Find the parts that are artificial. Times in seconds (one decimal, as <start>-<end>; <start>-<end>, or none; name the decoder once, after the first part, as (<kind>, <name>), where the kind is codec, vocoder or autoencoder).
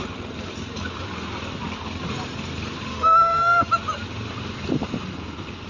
2.9-3.7 (autoencoder, DAC-VAE)